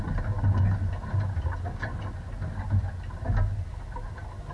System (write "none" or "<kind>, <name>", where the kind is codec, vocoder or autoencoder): none